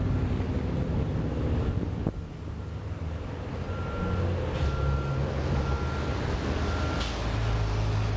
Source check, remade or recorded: recorded